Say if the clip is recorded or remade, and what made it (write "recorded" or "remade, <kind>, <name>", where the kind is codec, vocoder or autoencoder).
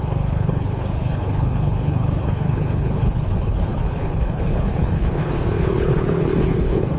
remade, codec, HILCodec